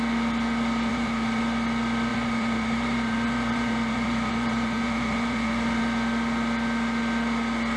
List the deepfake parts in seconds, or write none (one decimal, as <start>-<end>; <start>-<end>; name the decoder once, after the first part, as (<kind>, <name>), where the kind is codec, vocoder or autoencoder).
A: 0.9-1.4 (vocoder, BigVGAN v2); 2.1-5.8